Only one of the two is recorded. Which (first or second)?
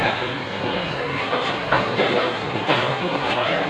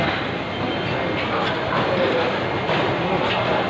second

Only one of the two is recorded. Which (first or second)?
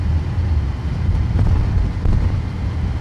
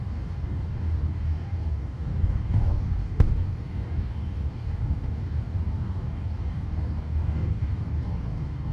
first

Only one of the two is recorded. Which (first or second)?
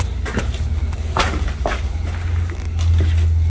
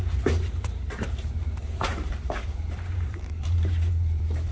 first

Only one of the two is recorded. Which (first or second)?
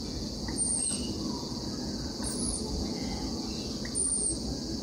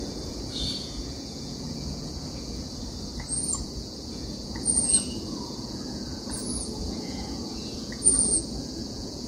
first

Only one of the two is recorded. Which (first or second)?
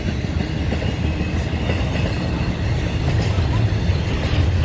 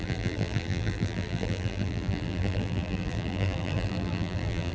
first